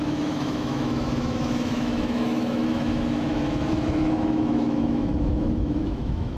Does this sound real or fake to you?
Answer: fake